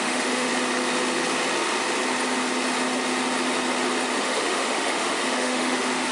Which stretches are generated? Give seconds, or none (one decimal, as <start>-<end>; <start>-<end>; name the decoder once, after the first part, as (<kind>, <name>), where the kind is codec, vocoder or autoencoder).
0.0-0.5 (autoencoder, DAC-VAE); 4.2-6.1